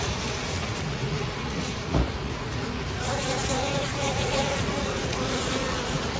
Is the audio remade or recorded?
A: remade